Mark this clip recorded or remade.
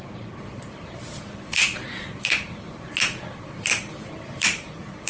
remade